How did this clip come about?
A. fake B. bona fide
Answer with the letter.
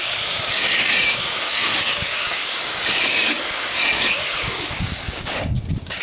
A